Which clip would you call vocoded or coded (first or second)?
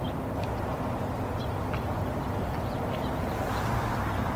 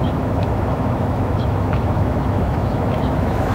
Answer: second